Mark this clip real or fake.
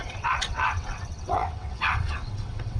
fake